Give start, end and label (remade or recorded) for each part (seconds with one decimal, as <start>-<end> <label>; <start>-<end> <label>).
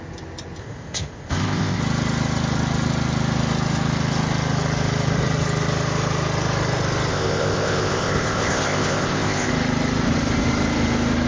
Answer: 0.0-0.6 recorded; 0.6-1.8 remade; 1.8-7.1 recorded; 7.1-9.5 remade; 9.5-11.3 recorded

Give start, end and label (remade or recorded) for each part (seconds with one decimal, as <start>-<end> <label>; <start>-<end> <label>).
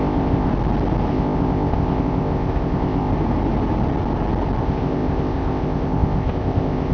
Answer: 0.0-0.5 remade; 0.5-1.1 recorded; 1.1-3.1 remade; 3.1-4.6 recorded; 4.6-6.9 remade